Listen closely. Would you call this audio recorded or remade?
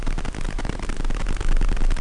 recorded